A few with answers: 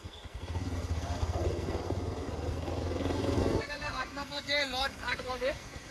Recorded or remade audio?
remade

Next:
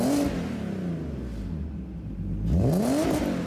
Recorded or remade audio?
recorded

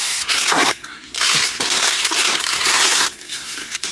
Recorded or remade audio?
remade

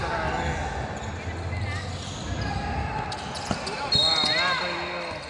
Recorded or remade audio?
recorded